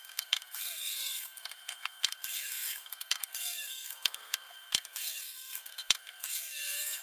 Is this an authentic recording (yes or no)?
no